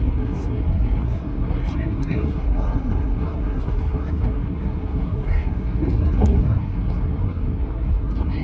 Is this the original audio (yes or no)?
no